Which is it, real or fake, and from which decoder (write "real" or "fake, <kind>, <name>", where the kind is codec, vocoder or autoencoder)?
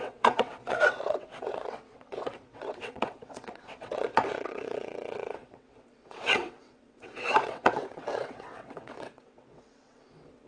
fake, vocoder, WaveNeXt